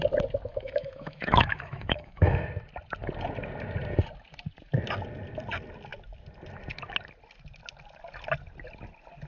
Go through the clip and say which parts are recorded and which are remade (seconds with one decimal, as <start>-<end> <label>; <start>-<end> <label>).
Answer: 0.0-0.5 recorded; 0.5-2.4 remade; 2.4-9.3 recorded